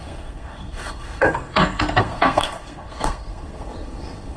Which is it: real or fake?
fake